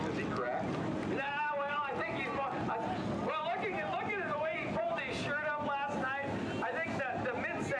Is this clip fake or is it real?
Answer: real